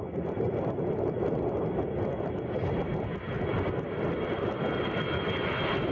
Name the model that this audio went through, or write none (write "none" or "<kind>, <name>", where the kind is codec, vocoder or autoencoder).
none